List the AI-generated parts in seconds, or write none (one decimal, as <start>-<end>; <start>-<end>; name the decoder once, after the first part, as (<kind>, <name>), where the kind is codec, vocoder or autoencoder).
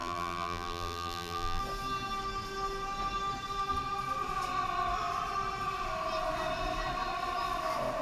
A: 0.0-1.6 (vocoder, BigVGAN v2)